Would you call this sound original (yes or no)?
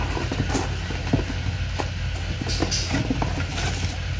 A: yes